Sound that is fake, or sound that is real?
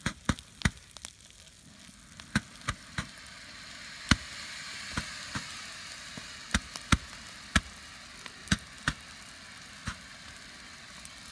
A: real